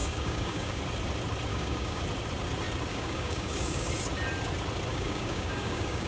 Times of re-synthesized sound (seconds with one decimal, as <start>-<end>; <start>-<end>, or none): 0.0-0.8; 1.5-2.0; 2.9-3.9; 4.9-6.1